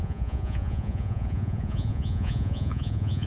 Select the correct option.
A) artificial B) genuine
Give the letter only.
A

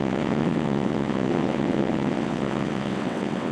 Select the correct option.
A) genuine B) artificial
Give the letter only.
B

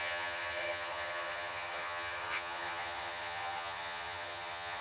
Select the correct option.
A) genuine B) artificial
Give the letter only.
B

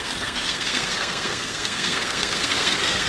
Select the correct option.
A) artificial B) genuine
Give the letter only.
A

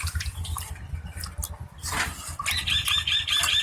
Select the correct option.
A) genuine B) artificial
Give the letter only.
A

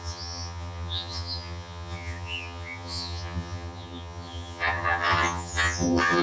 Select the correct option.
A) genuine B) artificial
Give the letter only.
B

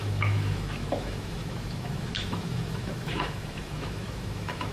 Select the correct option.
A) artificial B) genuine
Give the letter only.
A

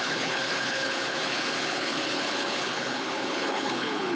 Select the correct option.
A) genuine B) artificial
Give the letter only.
B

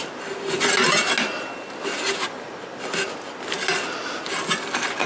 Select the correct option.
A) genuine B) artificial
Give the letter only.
A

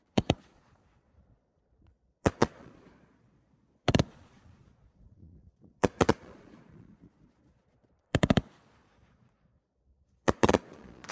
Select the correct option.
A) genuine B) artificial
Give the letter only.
B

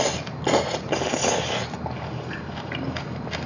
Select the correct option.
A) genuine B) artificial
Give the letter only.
A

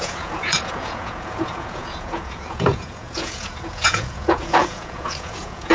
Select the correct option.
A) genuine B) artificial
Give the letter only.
B